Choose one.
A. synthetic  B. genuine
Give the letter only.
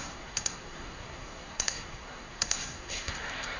A